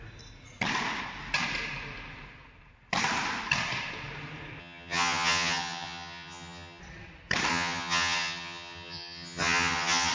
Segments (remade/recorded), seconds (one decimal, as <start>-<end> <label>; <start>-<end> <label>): 0.0-4.6 recorded; 4.6-6.8 remade; 6.8-7.5 recorded; 7.5-10.1 remade